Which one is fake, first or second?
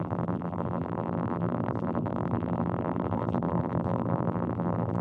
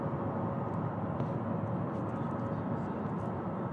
first